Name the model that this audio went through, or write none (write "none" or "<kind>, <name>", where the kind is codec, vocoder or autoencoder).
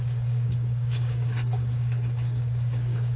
codec, DAC